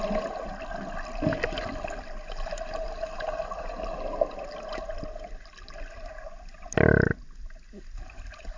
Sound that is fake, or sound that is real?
real